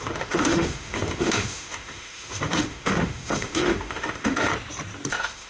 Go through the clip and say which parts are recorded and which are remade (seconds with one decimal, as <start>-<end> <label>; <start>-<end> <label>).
0.0-4.5 remade; 4.5-5.1 recorded; 5.1-5.5 remade